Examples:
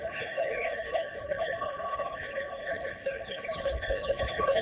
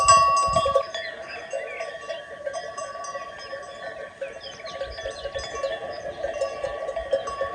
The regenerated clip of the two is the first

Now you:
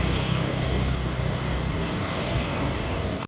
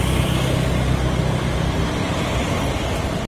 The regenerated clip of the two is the first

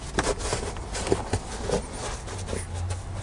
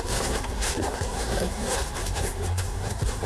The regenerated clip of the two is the second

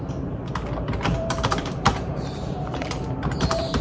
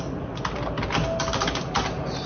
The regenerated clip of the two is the first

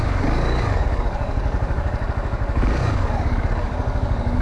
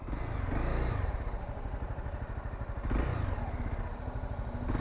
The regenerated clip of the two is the first